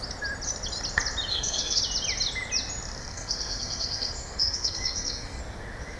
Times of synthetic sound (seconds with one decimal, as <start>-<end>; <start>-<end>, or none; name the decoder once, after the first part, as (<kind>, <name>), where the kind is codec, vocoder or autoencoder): 1.3-1.8 (codec, SNAC); 3.0-5.4